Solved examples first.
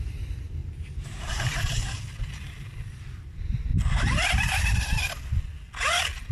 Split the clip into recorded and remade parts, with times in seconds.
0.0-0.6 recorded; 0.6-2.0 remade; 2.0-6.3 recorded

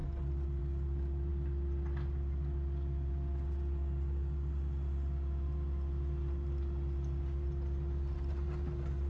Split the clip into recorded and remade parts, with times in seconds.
0.0-9.1 recorded

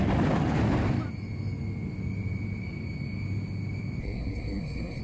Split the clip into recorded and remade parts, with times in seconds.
0.0-4.0 recorded; 4.0-5.0 remade

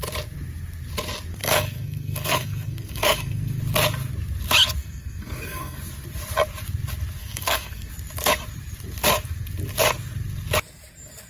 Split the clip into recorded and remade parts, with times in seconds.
0.0-1.4 recorded; 1.4-3.6 remade; 3.6-4.8 recorded; 4.8-5.8 remade; 5.8-7.2 recorded; 7.2-7.9 remade; 7.9-11.3 recorded

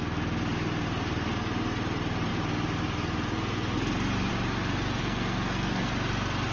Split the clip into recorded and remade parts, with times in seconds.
0.0-5.0 recorded; 5.0-5.9 remade; 5.9-6.5 recorded

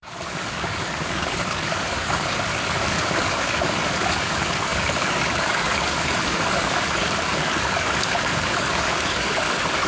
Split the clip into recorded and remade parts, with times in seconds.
0.0-9.9 remade